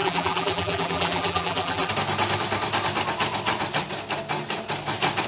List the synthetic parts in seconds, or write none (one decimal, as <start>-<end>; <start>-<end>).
0.0-1.9